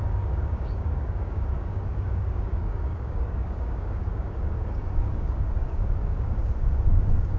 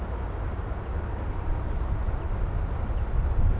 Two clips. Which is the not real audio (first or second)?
first